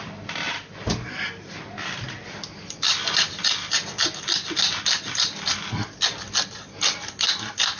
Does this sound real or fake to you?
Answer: real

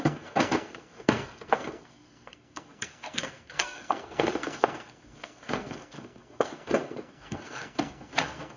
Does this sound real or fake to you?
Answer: fake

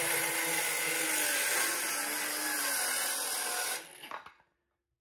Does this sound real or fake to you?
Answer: real